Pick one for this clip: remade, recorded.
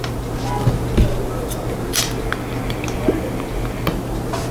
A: recorded